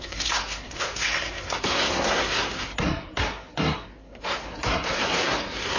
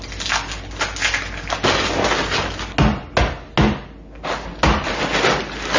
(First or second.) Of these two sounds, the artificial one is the first